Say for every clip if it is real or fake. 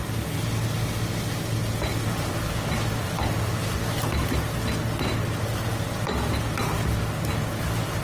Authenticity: real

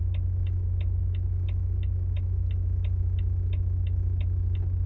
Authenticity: real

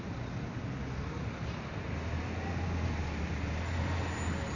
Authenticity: real